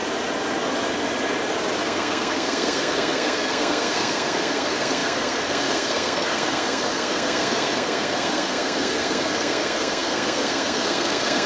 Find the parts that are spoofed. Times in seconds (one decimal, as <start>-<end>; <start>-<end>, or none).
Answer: 1.8-11.5